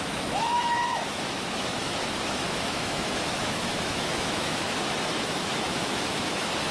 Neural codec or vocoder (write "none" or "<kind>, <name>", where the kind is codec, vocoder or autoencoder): autoencoder, DAC-VAE